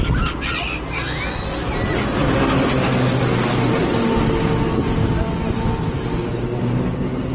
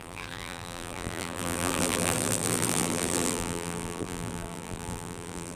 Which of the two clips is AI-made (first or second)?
second